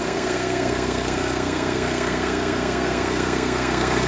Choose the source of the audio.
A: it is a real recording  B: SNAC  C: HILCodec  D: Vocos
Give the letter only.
B